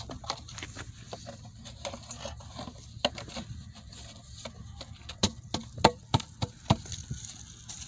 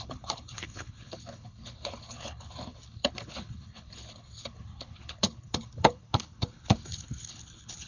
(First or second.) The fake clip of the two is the second